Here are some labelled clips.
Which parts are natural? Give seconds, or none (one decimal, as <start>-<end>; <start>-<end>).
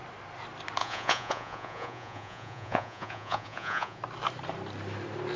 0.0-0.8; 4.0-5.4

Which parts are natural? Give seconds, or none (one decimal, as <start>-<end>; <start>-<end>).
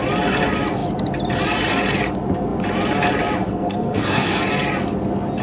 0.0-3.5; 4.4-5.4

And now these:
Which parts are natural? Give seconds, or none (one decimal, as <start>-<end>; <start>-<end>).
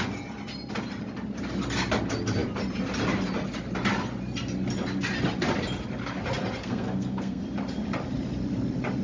0.0-6.6; 7.4-9.0